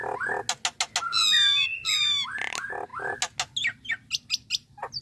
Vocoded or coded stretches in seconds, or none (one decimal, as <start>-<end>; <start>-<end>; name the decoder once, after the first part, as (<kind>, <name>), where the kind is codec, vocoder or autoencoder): none